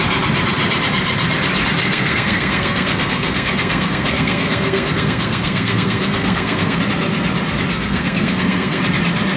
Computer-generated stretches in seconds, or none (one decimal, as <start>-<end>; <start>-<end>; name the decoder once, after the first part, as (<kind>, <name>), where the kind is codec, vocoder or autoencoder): 1.8-6.8 (codec, SNAC); 7.7-8.8